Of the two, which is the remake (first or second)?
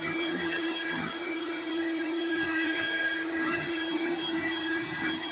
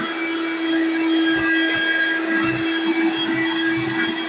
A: first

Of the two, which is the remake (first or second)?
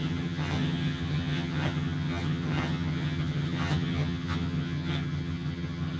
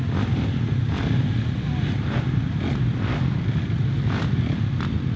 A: first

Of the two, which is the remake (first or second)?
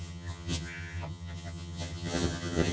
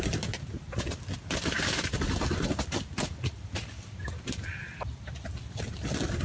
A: first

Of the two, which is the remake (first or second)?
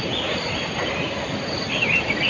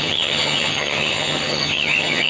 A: second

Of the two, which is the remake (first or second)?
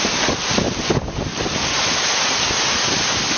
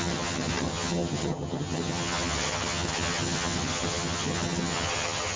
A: second